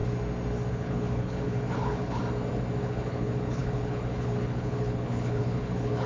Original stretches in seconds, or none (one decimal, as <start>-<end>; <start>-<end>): 0.0-0.7; 2.2-2.8